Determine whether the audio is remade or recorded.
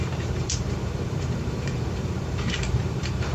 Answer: remade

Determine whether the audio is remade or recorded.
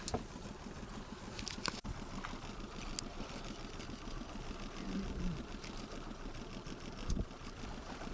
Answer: recorded